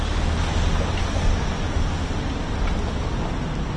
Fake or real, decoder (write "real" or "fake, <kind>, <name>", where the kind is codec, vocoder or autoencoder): real